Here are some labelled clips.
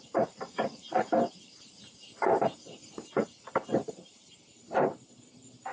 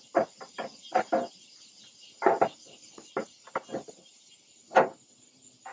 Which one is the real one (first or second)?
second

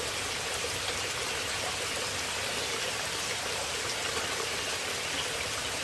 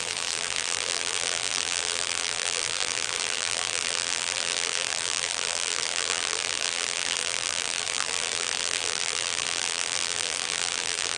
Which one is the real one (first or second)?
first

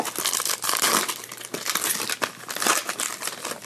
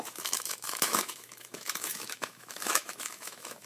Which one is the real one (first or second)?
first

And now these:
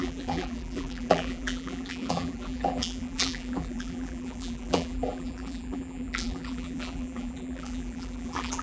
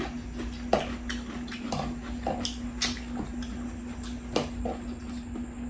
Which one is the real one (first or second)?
second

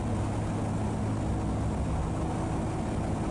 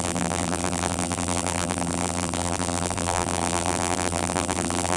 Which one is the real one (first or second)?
first